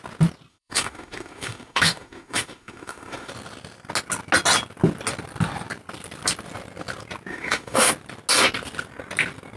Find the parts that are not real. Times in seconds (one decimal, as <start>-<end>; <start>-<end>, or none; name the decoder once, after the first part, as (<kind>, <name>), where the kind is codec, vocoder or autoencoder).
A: 0.5-3.3 (autoencoder, DAC-VAE); 7.3-7.9